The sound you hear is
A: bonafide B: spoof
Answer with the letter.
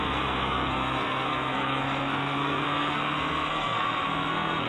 B